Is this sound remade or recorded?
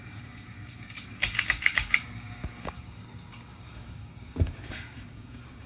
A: remade